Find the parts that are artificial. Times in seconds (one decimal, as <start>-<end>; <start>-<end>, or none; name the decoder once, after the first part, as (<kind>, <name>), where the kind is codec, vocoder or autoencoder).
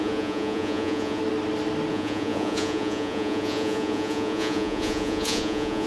0.0-1.2 (vocoder, Vocos); 1.9-5.9